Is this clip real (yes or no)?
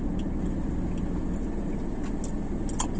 yes